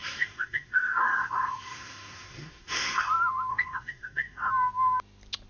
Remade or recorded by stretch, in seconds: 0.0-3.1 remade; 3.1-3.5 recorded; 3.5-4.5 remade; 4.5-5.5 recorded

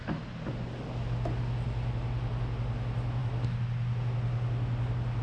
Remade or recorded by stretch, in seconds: 0.0-5.2 recorded

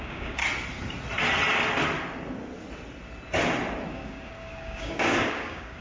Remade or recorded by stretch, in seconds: 0.0-0.4 remade; 0.4-3.9 recorded; 3.9-5.8 remade

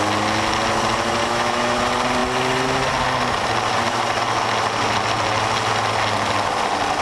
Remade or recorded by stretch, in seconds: 0.0-1.2 recorded; 1.2-1.8 remade; 1.8-7.0 recorded

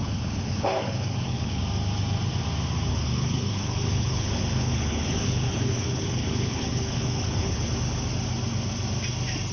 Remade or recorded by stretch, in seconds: 0.0-1.6 remade; 1.6-2.9 recorded; 2.9-7.7 remade; 7.7-9.5 recorded

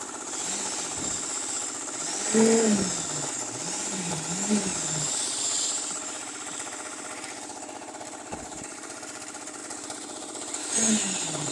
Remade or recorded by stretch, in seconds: 0.0-1.6 remade; 1.6-3.3 recorded; 3.3-11.5 remade

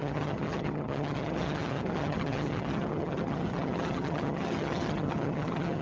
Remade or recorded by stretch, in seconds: 0.0-5.8 remade

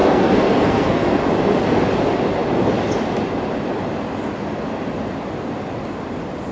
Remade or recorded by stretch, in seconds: 0.0-1.2 remade; 1.2-6.5 recorded